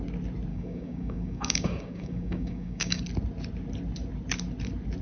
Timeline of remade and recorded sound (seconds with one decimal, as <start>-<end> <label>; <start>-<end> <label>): 0.0-0.5 recorded; 0.5-3.0 remade; 3.0-5.0 recorded

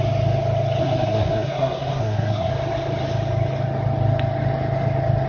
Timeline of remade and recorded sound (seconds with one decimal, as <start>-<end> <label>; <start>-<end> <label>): 0.0-0.8 recorded; 0.8-2.5 remade; 2.5-5.3 recorded